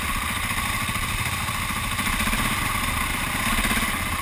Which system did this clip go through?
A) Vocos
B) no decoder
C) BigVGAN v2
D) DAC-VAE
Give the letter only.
B